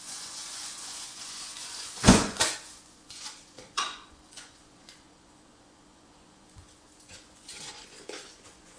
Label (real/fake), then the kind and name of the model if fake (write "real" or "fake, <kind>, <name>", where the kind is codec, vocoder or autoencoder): fake, vocoder, Vocos